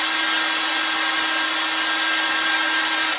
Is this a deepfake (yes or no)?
no